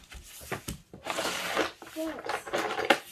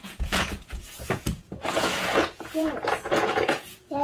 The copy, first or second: second